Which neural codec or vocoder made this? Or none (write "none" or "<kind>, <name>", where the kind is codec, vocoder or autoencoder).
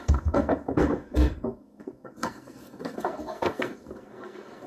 codec, SNAC